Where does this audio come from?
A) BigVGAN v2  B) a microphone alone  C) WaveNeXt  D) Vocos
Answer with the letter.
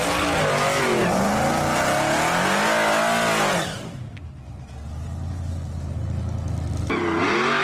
B